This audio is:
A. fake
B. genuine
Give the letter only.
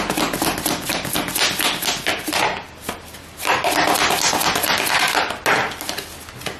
B